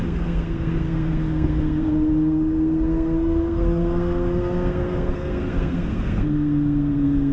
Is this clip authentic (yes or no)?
no